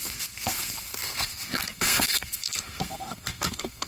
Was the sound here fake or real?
fake